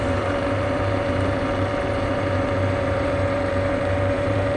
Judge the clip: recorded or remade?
remade